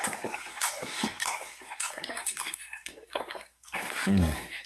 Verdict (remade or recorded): remade